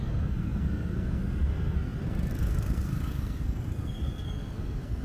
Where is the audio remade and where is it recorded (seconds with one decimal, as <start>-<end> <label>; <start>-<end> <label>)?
0.0-5.0 remade